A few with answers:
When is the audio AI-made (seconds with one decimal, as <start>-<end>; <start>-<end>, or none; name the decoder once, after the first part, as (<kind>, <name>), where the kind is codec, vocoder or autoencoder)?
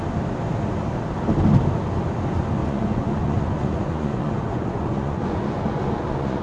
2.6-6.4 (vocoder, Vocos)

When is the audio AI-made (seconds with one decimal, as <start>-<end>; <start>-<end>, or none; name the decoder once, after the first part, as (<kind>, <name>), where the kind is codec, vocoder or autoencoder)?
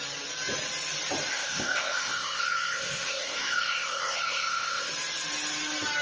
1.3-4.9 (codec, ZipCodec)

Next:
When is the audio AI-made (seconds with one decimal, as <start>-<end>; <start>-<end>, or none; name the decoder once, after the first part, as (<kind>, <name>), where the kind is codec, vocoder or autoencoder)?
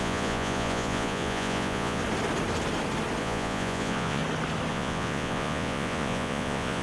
0.0-2.0 (vocoder, Vocos); 3.2-4.2; 4.7-6.8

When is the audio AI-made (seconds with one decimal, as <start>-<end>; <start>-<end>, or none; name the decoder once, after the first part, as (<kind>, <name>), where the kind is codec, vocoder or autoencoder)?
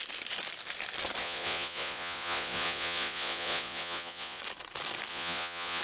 1.2-4.4 (vocoder, Vocos); 5.1-5.8